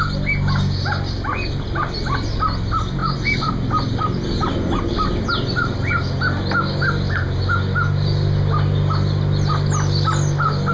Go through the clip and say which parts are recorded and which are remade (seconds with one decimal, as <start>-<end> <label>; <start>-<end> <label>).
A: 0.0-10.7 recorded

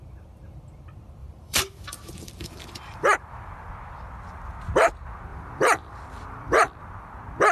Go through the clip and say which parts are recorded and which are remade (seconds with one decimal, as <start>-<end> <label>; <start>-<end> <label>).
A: 0.0-1.2 recorded; 1.2-3.7 remade; 3.7-5.3 recorded; 5.3-6.7 remade; 6.7-7.5 recorded

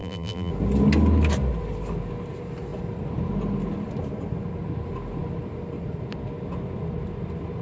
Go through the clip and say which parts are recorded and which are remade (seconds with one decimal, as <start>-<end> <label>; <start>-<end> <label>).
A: 0.0-0.5 remade; 0.5-7.6 recorded

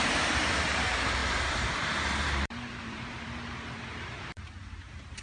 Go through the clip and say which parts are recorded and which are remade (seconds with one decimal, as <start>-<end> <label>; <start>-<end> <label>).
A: 0.0-5.2 remade